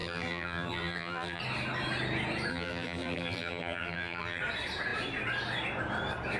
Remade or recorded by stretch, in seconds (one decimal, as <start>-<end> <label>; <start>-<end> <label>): 0.0-1.4 remade; 1.4-2.5 recorded; 2.5-4.4 remade; 4.4-6.4 recorded